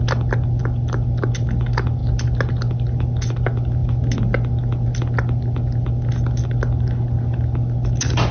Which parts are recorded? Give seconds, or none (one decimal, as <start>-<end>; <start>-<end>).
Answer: 0.0-8.3